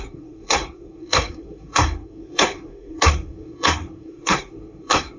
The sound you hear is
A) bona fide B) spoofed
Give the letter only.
B